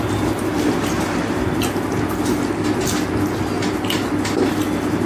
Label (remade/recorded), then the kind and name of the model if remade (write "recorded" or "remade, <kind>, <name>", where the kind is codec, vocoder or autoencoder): recorded